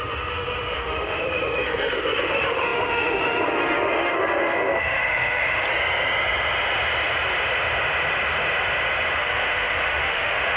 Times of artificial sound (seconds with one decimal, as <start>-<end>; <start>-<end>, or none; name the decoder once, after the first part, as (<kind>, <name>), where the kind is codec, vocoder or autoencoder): 0.0-5.7 (autoencoder, DAC-VAE); 9.2-10.6